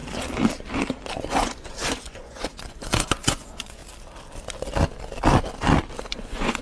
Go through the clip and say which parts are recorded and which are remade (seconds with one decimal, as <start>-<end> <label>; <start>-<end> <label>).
0.0-1.3 recorded; 1.3-3.8 remade; 3.8-6.0 recorded; 6.0-6.6 remade

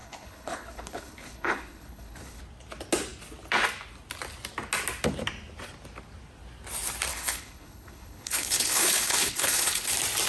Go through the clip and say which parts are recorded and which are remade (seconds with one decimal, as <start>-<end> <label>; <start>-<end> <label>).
0.0-2.4 remade; 2.4-7.1 recorded; 7.1-9.9 remade; 9.9-10.3 recorded

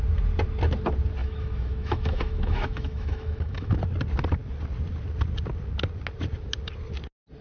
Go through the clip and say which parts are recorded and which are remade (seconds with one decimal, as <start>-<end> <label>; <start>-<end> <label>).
0.0-1.2 recorded; 1.2-3.8 remade; 3.8-7.4 recorded

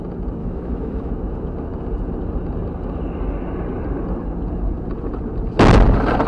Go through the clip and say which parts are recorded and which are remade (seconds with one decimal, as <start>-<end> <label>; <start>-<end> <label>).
0.0-0.4 recorded; 0.4-1.1 remade; 1.1-6.3 recorded

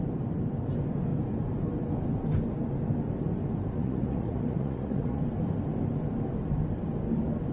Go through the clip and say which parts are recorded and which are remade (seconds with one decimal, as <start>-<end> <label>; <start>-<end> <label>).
0.0-3.8 recorded; 3.8-5.2 remade; 5.2-7.5 recorded

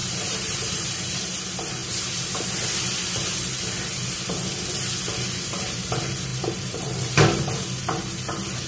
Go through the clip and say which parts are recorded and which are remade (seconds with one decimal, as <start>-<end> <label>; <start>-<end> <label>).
0.0-1.4 remade; 1.4-1.8 recorded; 1.8-2.5 remade; 2.5-6.3 recorded; 6.3-7.1 remade; 7.1-8.7 recorded

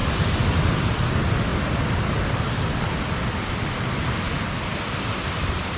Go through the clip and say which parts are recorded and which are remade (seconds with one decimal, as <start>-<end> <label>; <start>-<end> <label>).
0.0-0.5 remade; 0.5-4.7 recorded; 4.7-5.8 remade

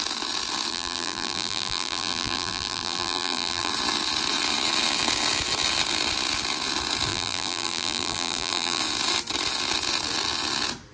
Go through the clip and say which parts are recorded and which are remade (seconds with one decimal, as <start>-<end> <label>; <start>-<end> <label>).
0.0-0.7 recorded; 0.7-3.7 remade; 3.7-7.1 recorded; 7.1-8.8 remade; 8.8-10.9 recorded